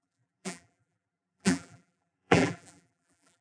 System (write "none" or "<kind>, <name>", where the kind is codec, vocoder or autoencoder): vocoder, BigVGAN v2